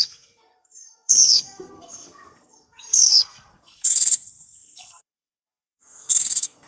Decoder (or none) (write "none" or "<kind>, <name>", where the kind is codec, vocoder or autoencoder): codec, SNAC